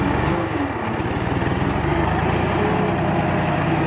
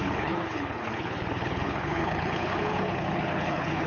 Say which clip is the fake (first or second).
second